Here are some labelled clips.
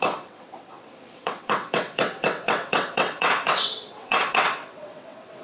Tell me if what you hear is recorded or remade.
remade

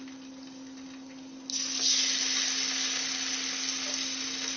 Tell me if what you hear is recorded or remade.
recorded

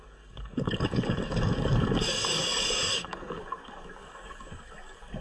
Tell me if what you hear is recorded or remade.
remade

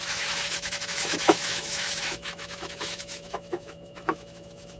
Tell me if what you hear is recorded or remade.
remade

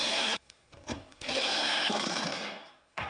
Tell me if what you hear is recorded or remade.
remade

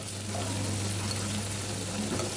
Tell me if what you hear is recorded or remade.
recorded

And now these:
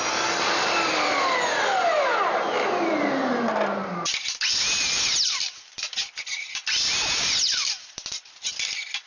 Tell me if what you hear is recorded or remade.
recorded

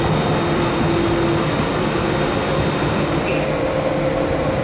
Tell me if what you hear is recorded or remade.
recorded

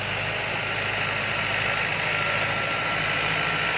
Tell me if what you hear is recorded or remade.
recorded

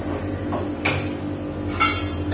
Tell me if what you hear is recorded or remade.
recorded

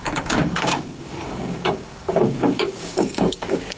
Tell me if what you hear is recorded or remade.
remade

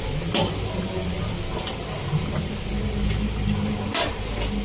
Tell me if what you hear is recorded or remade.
recorded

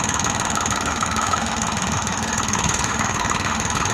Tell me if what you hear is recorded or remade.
remade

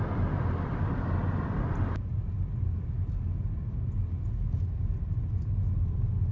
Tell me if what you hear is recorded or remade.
recorded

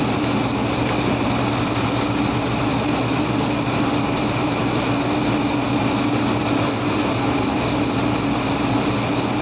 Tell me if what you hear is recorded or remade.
recorded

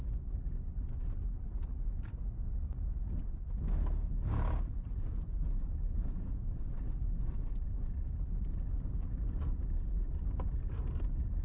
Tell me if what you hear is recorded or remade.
recorded